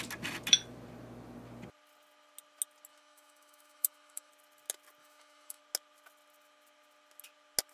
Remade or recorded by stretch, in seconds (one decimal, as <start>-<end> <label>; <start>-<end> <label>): 0.0-2.9 recorded; 2.9-4.3 remade; 4.3-5.0 recorded; 5.0-5.6 remade; 5.6-7.7 recorded